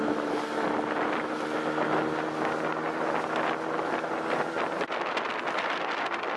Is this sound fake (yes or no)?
no